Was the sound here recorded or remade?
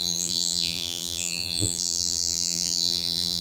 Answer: remade